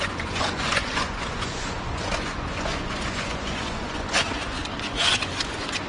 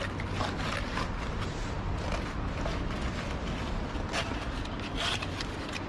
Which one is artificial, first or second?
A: first